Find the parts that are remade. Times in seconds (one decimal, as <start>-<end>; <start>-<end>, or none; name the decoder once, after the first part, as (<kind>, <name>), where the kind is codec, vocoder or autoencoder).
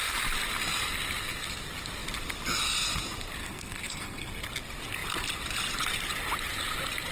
3.4-4.3 (codec, SNAC)